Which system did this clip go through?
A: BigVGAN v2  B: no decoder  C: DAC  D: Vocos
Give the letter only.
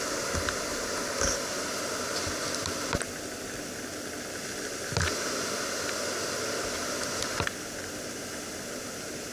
B